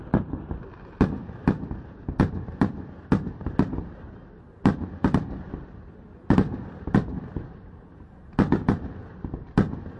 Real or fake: real